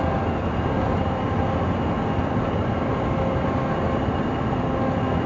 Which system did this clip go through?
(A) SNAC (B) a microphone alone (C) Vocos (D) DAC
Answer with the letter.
B